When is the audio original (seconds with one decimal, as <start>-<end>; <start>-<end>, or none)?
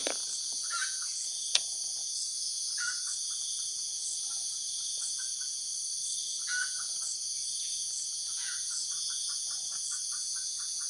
5.7-6.2